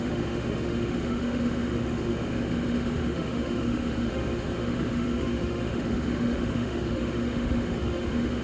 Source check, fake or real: fake